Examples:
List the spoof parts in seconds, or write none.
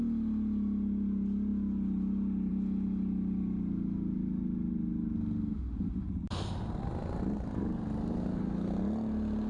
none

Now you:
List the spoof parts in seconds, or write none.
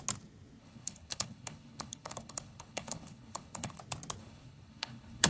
0.6-3.8 (codec, HILCodec); 4.2-5.3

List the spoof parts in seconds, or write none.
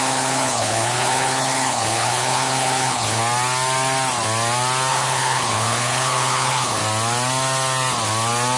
0.0-3.2 (codec, HILCodec); 4.9-6.8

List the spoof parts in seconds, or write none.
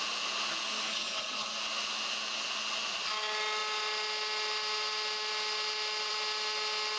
0.9-1.6 (codec, HILCodec)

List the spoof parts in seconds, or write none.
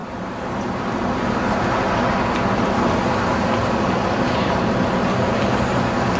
none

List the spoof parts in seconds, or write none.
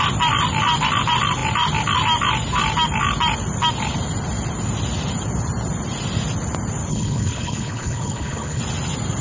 6.9-8.6 (codec, HILCodec)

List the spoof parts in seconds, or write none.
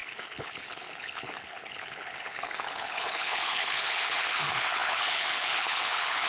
0.0-6.3 (codec, HILCodec)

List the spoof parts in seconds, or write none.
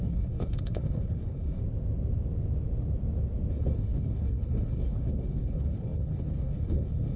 0.0-1.6 (codec, HILCodec); 3.5-7.2